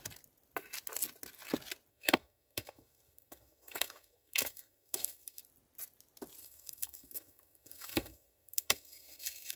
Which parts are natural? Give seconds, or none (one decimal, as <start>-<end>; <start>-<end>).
0.0-1.9; 5.4-6.4